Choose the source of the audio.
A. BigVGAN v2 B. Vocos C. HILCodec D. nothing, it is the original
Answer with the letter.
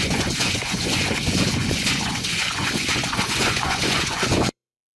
B